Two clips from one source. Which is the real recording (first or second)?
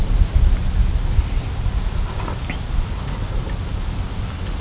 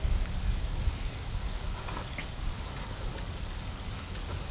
first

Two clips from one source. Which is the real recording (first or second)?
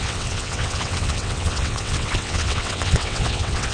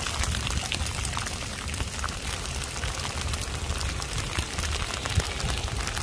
second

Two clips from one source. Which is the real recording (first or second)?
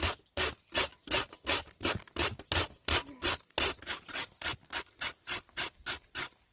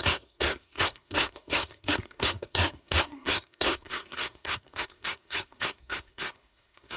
first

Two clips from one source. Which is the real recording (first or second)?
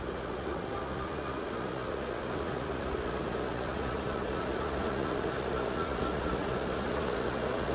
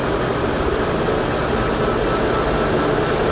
second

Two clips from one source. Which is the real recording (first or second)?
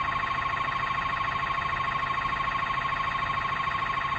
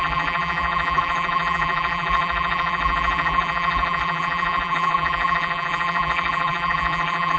first